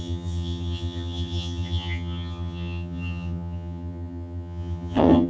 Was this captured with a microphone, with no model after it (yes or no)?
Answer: no